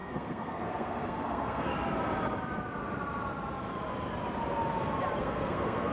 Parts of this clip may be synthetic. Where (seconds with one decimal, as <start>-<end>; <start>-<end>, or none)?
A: 0.0-1.7; 5.2-5.9